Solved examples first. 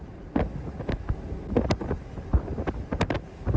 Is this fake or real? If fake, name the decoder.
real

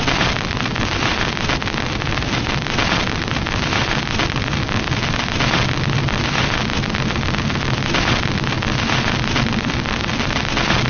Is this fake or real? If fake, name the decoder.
real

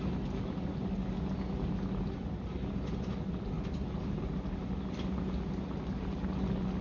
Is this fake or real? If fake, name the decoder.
real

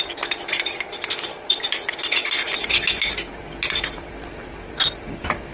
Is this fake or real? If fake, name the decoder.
real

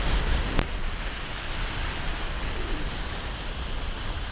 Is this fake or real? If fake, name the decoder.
real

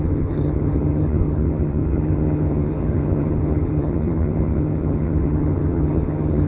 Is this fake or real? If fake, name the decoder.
fake, vocoder, HiFi-GAN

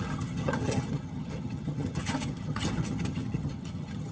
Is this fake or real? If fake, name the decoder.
fake, vocoder, HiFi-GAN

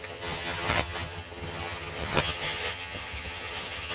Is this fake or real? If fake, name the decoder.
fake, vocoder, HiFi-GAN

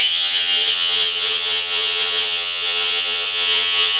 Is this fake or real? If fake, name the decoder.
fake, vocoder, HiFi-GAN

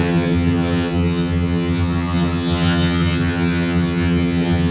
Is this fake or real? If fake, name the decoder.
fake, vocoder, HiFi-GAN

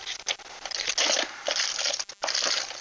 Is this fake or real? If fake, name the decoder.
real